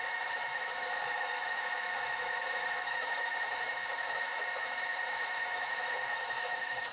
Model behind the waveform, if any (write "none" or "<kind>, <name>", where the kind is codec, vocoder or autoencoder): autoencoder, DAC-VAE